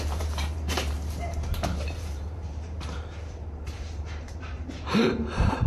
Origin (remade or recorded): remade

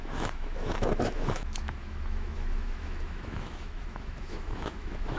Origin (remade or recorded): remade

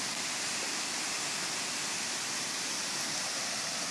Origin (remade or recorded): recorded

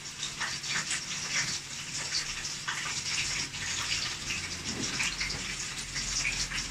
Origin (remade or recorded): recorded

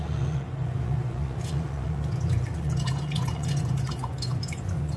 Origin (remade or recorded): remade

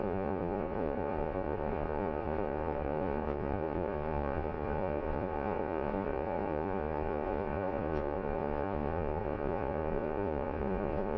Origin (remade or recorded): remade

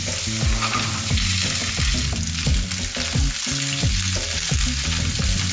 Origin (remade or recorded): recorded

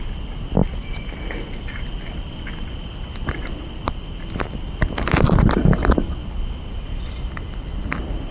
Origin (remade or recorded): recorded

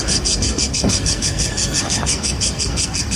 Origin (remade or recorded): remade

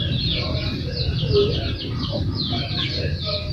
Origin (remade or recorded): recorded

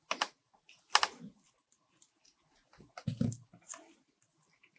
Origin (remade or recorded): recorded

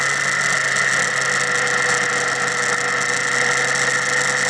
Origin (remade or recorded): recorded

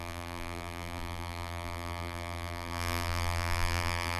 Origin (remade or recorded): remade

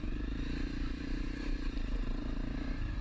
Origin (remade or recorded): recorded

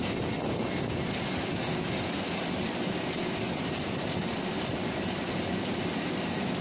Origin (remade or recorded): recorded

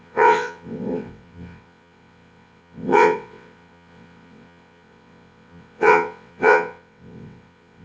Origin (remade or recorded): remade